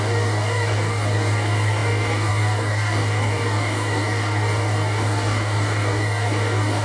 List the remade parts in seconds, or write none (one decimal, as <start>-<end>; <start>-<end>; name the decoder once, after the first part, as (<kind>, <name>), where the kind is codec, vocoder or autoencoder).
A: 0.0-6.8 (codec, DAC)